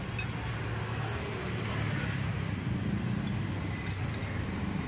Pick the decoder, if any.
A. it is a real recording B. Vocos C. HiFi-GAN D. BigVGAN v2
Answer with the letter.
A